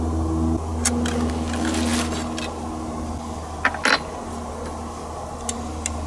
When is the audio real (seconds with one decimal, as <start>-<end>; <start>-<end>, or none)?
0.0-6.1